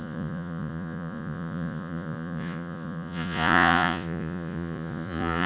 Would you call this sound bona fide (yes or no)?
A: no